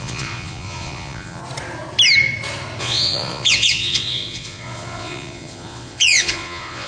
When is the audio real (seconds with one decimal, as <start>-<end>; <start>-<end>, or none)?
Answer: 1.4-2.8